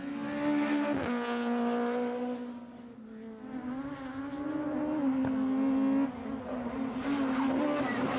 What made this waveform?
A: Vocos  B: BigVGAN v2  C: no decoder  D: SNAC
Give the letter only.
C